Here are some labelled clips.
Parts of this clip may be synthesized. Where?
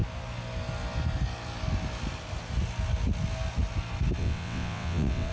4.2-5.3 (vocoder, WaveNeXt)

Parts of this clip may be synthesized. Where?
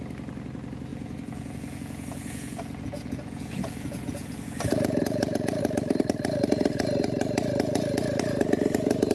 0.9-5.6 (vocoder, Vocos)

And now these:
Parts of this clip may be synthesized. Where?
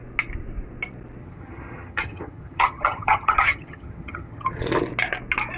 1.2-4.6 (vocoder, HiFi-GAN)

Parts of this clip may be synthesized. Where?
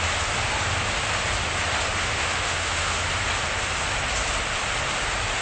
2.0-3.0 (autoencoder, DAC-VAE)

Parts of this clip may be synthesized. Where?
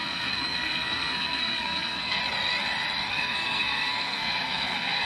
0.0-2.2 (codec, SNAC); 3.1-5.1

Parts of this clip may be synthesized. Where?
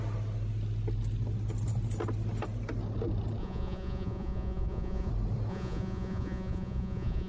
3.4-5.1 (vocoder, Vocos); 5.5-7.3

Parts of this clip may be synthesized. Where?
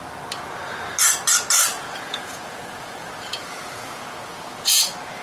1.7-4.8 (vocoder, Vocos)